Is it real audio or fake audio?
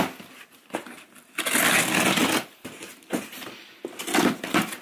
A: real